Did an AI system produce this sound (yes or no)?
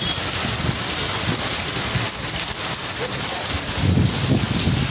no